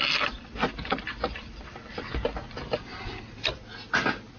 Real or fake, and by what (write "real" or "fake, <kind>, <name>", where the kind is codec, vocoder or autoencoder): real